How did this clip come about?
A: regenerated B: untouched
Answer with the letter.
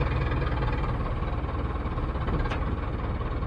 B